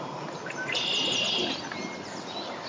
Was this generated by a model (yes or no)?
no